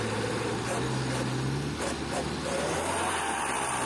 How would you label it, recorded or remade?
recorded